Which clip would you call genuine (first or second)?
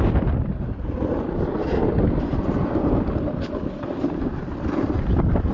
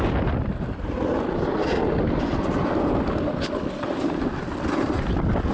second